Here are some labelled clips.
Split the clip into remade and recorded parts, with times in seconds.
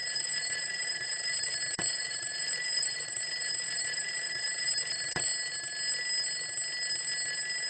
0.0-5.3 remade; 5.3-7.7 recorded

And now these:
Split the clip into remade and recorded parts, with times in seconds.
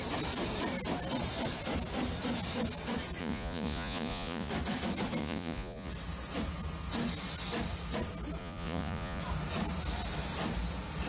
0.0-3.2 recorded; 3.2-4.5 remade; 4.5-5.2 recorded; 5.2-5.9 remade; 5.9-8.4 recorded; 8.4-9.2 remade; 9.2-11.1 recorded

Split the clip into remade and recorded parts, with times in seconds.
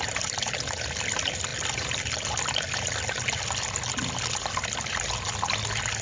0.0-6.0 recorded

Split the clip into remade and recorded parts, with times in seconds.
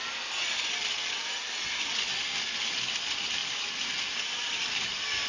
0.0-5.3 recorded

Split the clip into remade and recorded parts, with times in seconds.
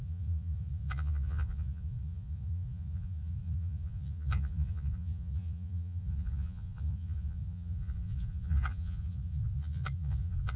0.0-10.6 remade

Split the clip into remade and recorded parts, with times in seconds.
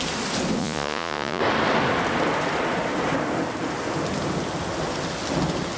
0.0-0.6 recorded; 0.6-1.4 remade; 1.4-5.8 recorded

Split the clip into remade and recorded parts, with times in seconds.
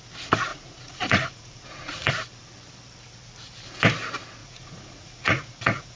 0.0-0.5 recorded; 0.5-2.1 remade; 2.1-4.4 recorded; 4.4-6.0 remade